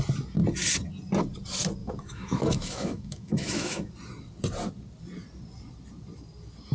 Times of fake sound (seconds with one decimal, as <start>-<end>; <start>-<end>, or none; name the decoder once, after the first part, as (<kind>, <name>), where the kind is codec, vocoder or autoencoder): 1.8-3.9 (autoencoder, DAC-VAE)